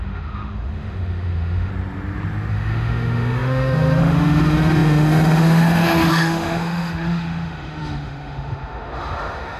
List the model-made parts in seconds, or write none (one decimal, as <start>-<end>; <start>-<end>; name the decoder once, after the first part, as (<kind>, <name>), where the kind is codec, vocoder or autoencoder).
0.0-1.7 (autoencoder, DAC-VAE); 2.5-9.6